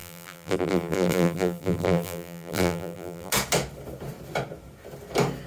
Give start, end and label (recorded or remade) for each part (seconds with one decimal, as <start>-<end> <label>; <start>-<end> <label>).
0.0-3.3 remade; 3.3-5.5 recorded